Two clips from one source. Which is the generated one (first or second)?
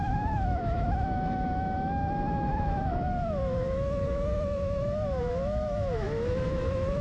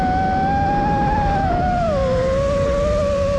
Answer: first